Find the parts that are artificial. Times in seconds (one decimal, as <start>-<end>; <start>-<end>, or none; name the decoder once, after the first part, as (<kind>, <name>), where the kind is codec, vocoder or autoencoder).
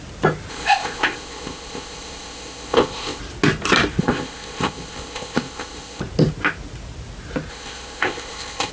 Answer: 0.5-3.2 (codec, ZipCodec); 4.0-6.0; 7.5-8.7